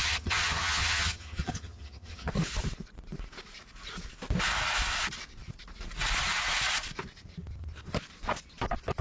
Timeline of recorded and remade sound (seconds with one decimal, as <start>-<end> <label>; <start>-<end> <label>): 0.0-2.3 remade; 2.3-9.0 recorded